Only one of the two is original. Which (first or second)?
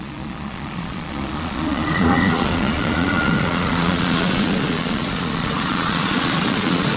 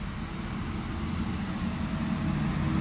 second